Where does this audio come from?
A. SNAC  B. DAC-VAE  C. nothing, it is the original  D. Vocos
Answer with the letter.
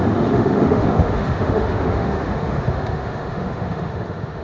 B